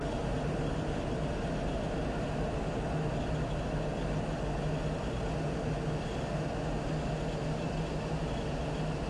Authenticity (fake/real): real